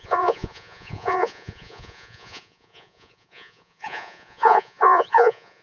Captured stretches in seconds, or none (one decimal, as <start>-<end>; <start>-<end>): none